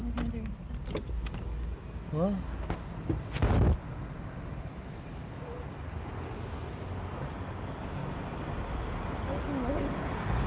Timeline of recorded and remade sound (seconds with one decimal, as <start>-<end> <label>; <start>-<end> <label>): 0.0-10.5 recorded